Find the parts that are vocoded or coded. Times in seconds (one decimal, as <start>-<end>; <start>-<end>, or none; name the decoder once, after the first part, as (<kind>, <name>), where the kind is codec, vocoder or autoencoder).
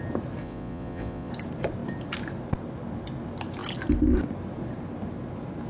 0.4-1.3 (vocoder, Vocos)